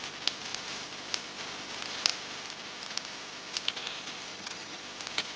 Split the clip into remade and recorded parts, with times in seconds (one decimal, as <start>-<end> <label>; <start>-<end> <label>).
0.0-4.3 recorded; 4.3-4.8 remade; 4.8-5.4 recorded